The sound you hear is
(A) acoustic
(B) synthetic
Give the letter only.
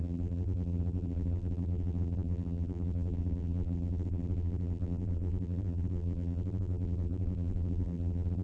B